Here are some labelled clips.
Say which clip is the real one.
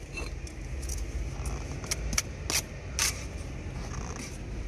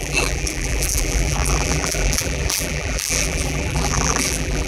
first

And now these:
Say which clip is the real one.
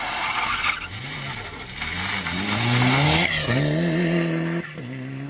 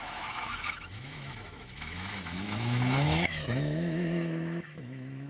first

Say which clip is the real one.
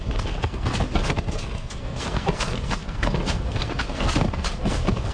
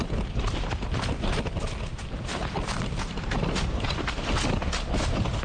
second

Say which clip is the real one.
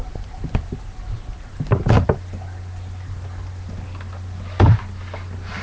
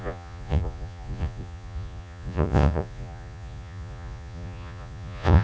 first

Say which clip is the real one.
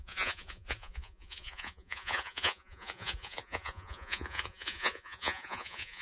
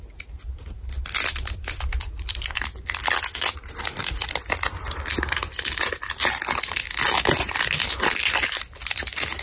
second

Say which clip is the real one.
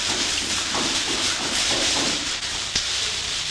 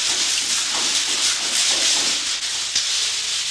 second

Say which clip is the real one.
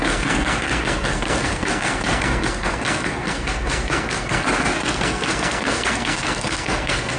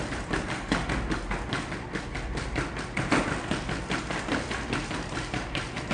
second